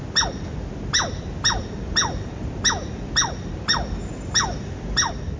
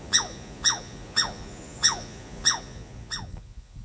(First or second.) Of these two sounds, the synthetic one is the second